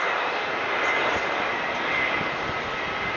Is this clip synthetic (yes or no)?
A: no